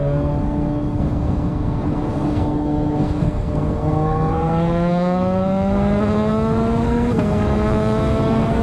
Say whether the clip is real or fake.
fake